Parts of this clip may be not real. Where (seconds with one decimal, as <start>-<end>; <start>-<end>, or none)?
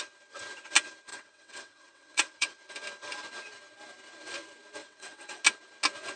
1.1-2.6; 4.8-5.4